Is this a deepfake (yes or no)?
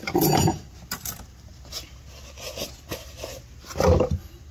no